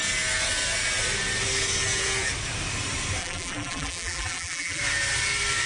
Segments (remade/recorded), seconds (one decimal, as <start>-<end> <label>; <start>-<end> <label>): 0.0-3.2 recorded; 3.2-4.8 remade; 4.8-5.7 recorded